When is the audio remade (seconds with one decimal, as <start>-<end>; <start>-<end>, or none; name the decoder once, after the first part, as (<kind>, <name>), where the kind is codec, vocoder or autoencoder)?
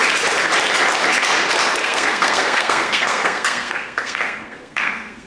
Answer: 1.8-5.3 (codec, SNAC)